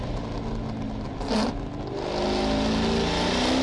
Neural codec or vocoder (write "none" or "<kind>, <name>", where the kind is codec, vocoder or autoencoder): none